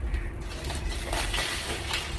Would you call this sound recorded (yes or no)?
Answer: yes